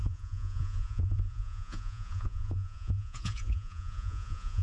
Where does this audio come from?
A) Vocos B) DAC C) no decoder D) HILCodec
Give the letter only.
A